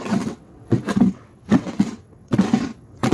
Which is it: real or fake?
fake